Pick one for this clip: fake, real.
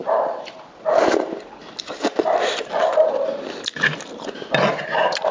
fake